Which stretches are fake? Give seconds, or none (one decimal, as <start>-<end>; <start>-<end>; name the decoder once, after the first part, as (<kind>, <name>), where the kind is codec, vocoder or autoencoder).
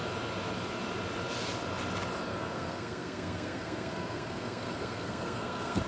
2.3-5.9 (codec, SNAC)